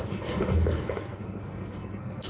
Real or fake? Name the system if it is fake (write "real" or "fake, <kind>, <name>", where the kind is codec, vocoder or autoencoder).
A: fake, codec, SNAC